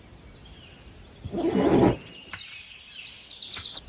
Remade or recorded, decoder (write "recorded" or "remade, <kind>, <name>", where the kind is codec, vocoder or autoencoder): recorded